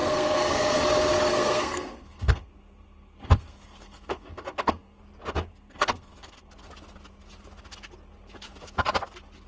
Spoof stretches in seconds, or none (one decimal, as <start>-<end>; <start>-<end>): 0.0-0.8; 1.3-5.0; 5.5-6.5